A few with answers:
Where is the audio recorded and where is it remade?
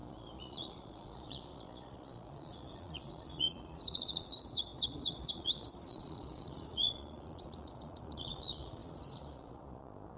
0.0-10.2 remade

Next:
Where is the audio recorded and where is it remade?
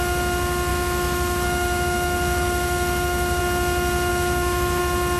0.0-0.7 recorded; 0.7-3.4 remade; 3.4-4.1 recorded; 4.1-4.8 remade; 4.8-5.2 recorded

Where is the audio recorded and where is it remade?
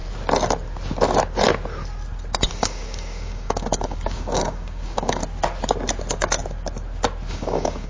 0.0-2.5 recorded; 2.5-5.2 remade; 5.2-7.3 recorded; 7.3-7.9 remade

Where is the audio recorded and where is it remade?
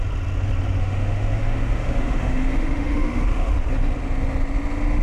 0.0-0.8 recorded; 0.8-3.5 remade; 3.5-5.0 recorded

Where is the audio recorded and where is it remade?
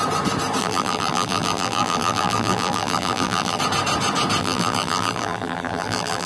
0.0-0.6 recorded; 0.6-3.6 remade; 3.6-4.4 recorded; 4.4-6.3 remade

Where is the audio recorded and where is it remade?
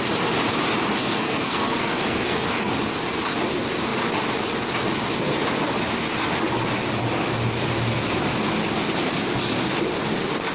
0.0-1.0 recorded; 1.0-2.7 remade; 2.7-10.5 recorded